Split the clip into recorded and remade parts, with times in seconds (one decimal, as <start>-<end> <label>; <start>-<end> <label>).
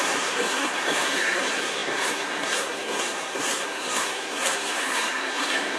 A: 0.0-5.8 remade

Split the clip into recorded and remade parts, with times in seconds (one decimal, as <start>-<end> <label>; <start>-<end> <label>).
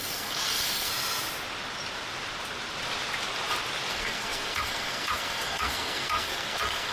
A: 0.0-0.9 remade; 0.9-3.9 recorded; 3.9-6.9 remade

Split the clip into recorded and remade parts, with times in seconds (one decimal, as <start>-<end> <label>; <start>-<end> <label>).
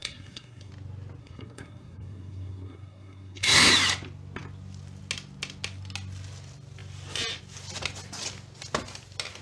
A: 0.0-0.7 remade; 0.7-1.2 recorded; 1.2-3.7 remade; 3.7-9.4 recorded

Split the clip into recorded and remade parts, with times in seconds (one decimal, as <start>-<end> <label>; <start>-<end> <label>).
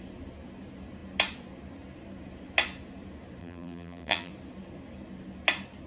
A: 0.0-3.4 recorded; 3.4-4.3 remade; 4.3-5.9 recorded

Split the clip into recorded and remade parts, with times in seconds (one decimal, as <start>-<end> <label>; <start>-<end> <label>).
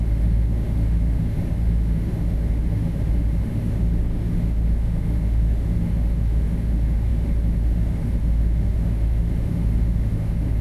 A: 0.0-10.6 remade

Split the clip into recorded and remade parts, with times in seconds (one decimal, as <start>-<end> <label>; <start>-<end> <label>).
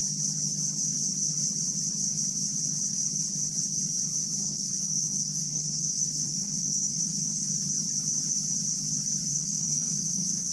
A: 0.0-4.4 recorded; 4.4-7.5 remade; 7.5-9.3 recorded; 9.3-10.5 remade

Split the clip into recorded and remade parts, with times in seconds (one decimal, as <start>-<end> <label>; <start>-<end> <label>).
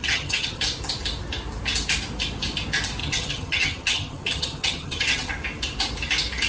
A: 0.0-0.6 remade; 0.6-3.0 recorded; 3.0-5.3 remade; 5.3-6.5 recorded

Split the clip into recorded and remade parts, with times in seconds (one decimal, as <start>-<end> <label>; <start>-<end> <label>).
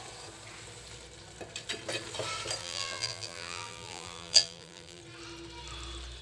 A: 0.0-2.6 recorded; 2.6-5.0 remade; 5.0-6.2 recorded